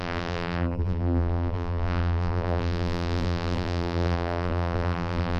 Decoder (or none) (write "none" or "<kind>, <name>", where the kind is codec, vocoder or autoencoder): vocoder, BigVGAN v2